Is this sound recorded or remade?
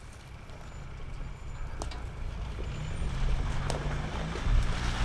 recorded